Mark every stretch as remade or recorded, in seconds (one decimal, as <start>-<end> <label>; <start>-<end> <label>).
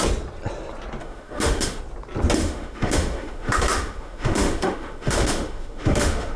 0.0-1.0 recorded; 1.0-1.8 remade; 1.8-2.4 recorded; 2.4-6.4 remade